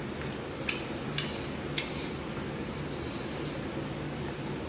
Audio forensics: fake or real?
real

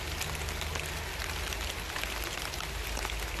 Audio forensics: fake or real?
real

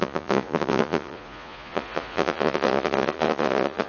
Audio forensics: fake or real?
fake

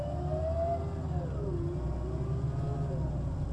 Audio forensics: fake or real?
real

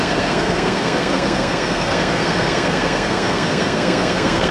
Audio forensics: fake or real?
fake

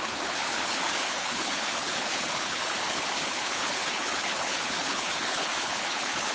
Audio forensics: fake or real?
fake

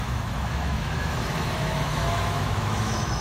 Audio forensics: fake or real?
fake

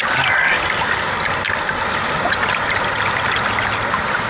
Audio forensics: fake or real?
real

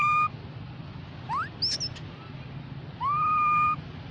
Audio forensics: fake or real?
real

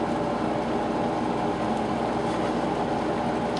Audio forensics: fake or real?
real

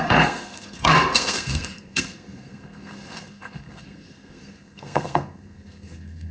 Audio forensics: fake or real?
fake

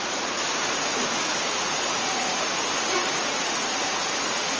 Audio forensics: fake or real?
fake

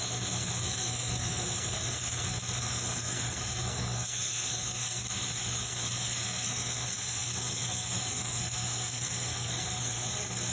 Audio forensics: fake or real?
fake